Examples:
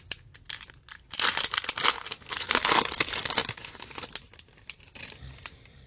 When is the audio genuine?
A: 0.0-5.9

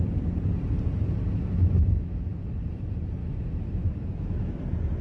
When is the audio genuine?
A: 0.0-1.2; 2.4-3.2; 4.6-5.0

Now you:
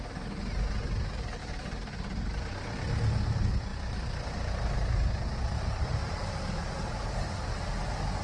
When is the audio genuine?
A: 0.0-1.4; 2.4-3.7; 7.3-8.2

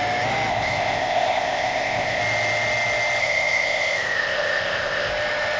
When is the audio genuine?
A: 0.0-0.5; 2.2-3.2; 5.1-5.6